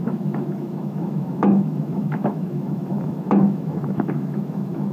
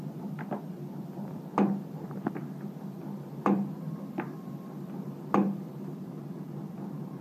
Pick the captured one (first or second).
second